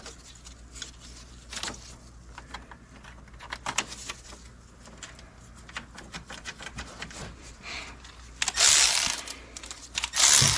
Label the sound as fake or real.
real